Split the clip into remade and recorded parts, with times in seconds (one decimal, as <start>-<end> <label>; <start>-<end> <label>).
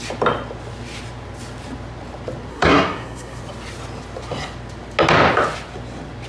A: 0.0-2.5 recorded; 2.5-3.4 remade; 3.4-6.3 recorded